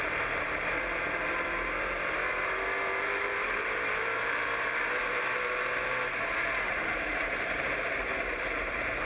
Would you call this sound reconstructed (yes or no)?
yes